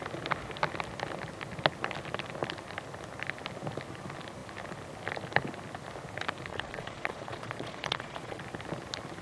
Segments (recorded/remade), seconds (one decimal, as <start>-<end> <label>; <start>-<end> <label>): 0.0-6.5 recorded; 6.5-8.4 remade; 8.4-9.2 recorded